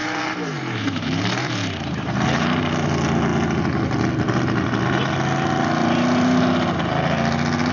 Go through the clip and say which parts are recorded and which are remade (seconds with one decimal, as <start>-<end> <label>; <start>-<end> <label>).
0.0-2.9 remade; 2.9-7.7 recorded